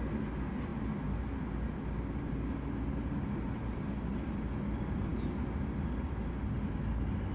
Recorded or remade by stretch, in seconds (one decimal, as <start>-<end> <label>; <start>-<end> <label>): 0.0-7.3 recorded